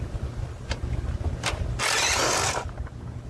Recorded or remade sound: recorded